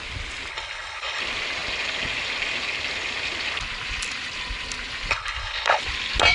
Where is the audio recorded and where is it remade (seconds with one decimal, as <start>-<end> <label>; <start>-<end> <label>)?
0.0-0.5 recorded; 0.5-1.2 remade; 1.2-5.1 recorded; 5.1-5.8 remade; 5.8-6.3 recorded